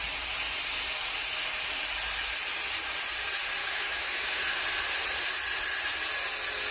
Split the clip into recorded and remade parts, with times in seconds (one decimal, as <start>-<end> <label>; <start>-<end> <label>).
0.0-3.6 recorded; 3.6-4.4 remade; 4.4-6.7 recorded